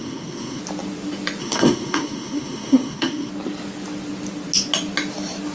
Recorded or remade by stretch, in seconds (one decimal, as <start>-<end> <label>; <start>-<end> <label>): 0.0-0.6 remade; 0.6-1.4 recorded; 1.4-3.3 remade; 3.3-5.5 recorded